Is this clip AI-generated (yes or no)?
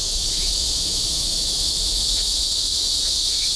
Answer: yes